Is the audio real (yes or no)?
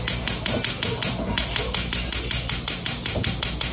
yes